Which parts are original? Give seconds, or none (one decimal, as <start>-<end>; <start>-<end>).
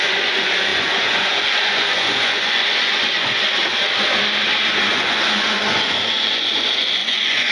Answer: 3.6-4.8